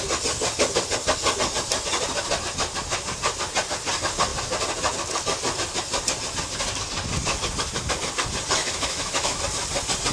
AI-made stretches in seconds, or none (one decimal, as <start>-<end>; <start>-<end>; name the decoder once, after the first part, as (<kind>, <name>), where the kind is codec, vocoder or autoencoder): 8.6-9.4 (autoencoder, DAC-VAE)